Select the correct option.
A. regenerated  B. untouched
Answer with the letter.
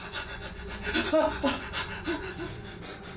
A